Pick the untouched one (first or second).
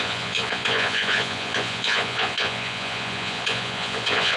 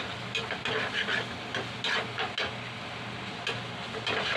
second